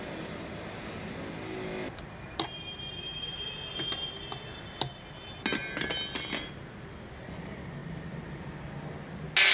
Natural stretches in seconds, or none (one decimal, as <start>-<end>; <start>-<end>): 0.0-9.5